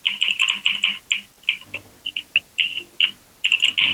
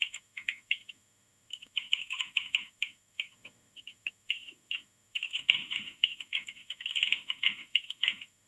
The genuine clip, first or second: first